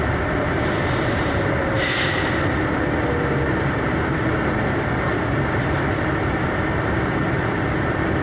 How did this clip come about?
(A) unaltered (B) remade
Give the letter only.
B